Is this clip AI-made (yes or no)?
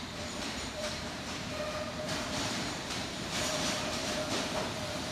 yes